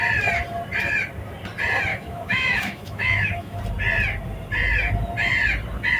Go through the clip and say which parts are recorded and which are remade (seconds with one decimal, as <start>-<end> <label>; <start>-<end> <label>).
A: 0.0-1.9 recorded; 1.9-3.6 remade; 3.6-6.0 recorded